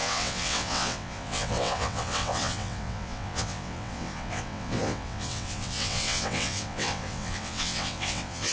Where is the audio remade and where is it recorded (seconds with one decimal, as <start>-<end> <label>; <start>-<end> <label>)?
0.0-8.5 remade